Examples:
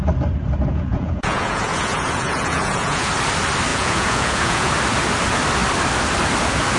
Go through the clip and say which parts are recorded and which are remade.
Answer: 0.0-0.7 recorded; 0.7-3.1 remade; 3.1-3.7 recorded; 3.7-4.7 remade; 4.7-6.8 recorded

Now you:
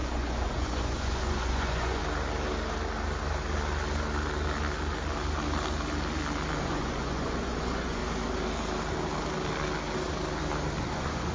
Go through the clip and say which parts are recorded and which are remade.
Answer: 0.0-2.0 remade; 2.0-6.6 recorded; 6.6-8.0 remade; 8.0-10.8 recorded; 10.8-11.3 remade